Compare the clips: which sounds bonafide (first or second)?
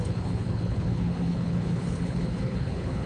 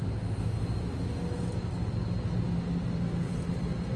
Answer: second